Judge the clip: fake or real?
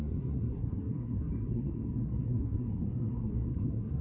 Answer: fake